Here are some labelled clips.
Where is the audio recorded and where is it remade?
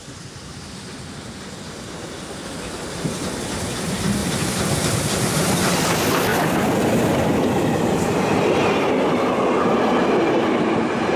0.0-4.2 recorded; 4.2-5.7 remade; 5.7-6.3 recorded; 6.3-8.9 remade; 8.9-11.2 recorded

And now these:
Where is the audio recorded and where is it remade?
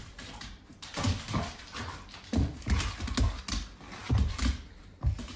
0.0-0.7 recorded; 0.7-2.4 remade; 2.4-4.0 recorded; 4.0-4.8 remade; 4.8-5.4 recorded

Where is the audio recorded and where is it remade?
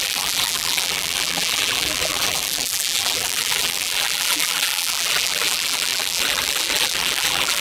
0.0-7.6 remade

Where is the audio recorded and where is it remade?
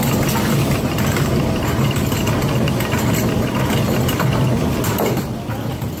0.0-6.0 recorded